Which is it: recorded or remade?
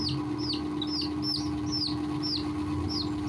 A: recorded